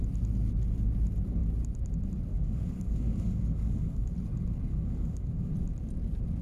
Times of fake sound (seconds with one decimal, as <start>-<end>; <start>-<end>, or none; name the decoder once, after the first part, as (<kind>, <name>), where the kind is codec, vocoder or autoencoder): 2.3-4.1 (codec, DAC); 4.7-5.5